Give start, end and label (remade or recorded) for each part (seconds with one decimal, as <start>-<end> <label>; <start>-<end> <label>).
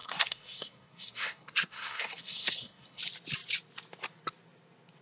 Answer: 0.0-3.0 remade; 3.0-5.0 recorded